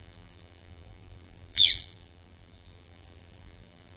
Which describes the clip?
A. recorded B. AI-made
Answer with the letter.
B